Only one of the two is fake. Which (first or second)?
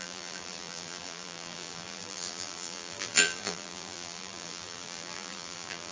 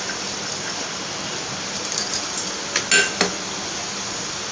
first